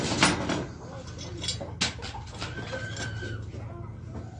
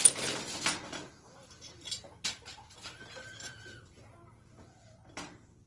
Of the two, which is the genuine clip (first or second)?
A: first